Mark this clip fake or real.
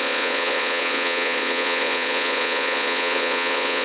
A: fake